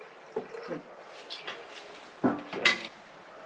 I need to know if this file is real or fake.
real